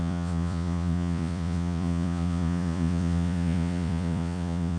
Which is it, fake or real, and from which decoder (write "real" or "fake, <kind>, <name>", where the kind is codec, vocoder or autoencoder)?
fake, vocoder, Vocos